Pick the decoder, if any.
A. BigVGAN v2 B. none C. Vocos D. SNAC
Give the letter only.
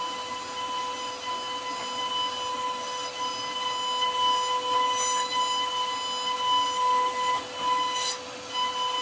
B